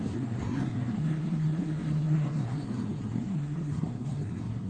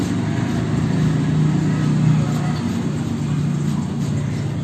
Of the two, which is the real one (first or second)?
second